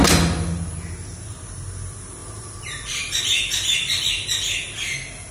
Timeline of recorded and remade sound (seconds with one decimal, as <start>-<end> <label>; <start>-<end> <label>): 0.0-2.2 recorded; 2.2-4.1 remade; 4.1-5.3 recorded